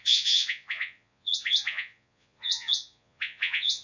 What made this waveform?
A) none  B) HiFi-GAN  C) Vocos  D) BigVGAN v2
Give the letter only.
C